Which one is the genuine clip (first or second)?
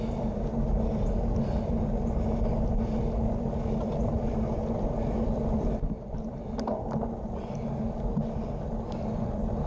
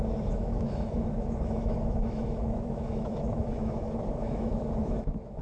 first